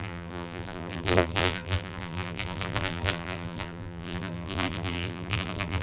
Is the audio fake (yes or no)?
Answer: yes